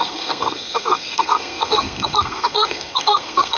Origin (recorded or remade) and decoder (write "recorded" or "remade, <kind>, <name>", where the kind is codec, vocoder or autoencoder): remade, codec, SNAC